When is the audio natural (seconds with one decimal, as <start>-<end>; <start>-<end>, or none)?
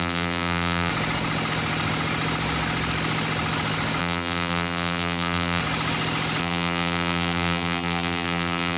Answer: 0.9-4.0; 5.6-6.4